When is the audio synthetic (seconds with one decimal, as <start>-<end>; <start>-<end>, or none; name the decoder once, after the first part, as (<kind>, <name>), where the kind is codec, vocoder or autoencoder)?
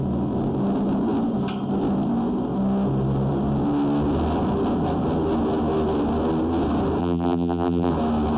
7.0-7.9 (vocoder, BigVGAN v2)